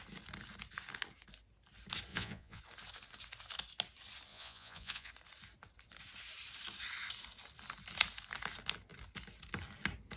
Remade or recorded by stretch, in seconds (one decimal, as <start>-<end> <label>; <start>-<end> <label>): 0.0-2.1 recorded; 2.1-2.6 remade; 2.6-4.3 recorded; 4.3-5.1 remade; 5.1-10.2 recorded